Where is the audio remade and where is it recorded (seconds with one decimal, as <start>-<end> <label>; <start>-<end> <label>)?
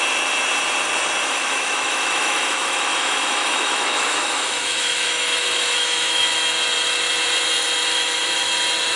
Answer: 0.0-1.2 recorded; 1.2-6.3 remade; 6.3-7.9 recorded; 7.9-8.5 remade; 8.5-9.0 recorded